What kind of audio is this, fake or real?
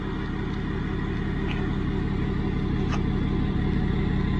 real